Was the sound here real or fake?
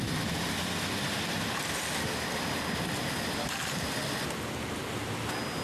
real